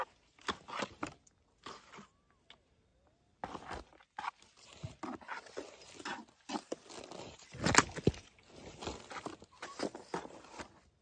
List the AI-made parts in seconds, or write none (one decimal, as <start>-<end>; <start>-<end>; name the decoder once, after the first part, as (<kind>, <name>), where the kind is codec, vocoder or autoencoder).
none

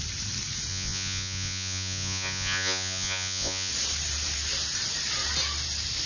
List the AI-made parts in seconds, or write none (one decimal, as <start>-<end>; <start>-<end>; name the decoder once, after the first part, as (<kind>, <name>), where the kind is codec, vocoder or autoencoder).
0.7-3.7 (vocoder, Vocos)

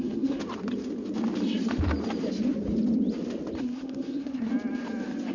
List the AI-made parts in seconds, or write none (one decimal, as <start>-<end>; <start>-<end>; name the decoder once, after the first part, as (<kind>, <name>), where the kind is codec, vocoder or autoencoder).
0.0-0.4 (codec, SNAC); 3.6-4.5

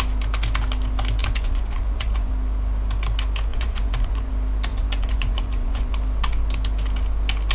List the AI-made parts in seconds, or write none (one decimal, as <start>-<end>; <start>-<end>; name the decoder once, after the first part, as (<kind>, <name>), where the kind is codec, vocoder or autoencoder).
1.2-2.3 (vocoder, Vocos); 3.5-4.3; 4.7-5.9

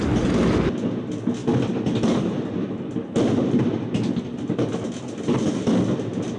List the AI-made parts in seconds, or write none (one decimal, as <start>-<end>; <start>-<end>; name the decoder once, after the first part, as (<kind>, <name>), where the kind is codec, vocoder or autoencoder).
none